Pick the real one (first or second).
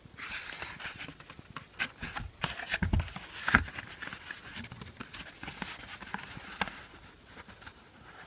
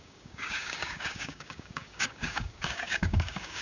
first